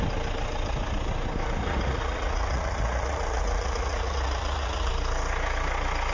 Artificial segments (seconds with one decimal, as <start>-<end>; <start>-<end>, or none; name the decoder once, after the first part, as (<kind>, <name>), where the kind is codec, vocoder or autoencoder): 1.6-4.9 (vocoder, Vocos)